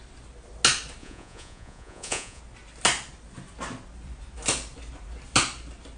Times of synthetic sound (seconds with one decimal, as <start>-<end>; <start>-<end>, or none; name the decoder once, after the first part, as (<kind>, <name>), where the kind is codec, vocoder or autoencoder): 1.0-2.4 (vocoder, Vocos)